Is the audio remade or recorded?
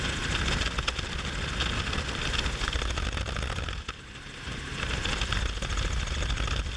recorded